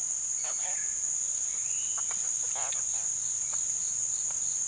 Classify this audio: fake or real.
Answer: real